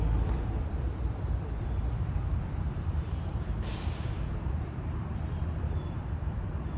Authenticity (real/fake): fake